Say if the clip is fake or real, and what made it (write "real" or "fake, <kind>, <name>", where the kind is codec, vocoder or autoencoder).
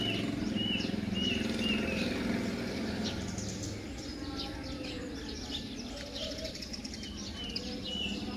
real